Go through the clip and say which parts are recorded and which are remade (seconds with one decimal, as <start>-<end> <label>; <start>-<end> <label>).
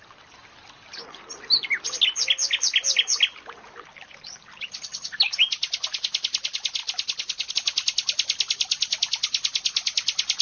0.0-10.4 recorded